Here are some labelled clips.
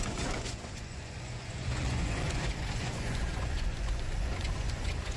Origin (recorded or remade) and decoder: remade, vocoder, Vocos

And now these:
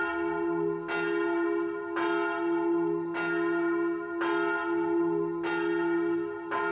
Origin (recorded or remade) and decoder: recorded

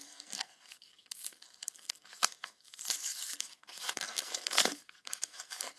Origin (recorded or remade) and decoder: remade, codec, SNAC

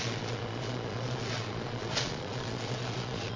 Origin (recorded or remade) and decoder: remade, vocoder, Vocos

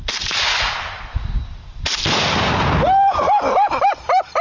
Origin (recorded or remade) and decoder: recorded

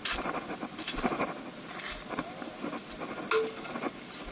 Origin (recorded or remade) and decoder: recorded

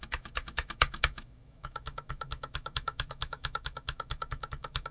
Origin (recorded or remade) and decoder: remade, autoencoder, DAC-VAE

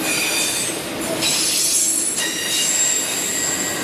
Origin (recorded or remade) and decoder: recorded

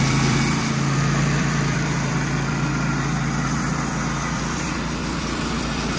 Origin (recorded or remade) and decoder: remade, vocoder, BigVGAN v2